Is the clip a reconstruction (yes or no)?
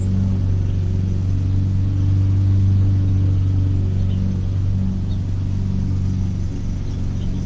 no